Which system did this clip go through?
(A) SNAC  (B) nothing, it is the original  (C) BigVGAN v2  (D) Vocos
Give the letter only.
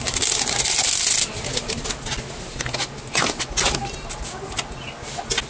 B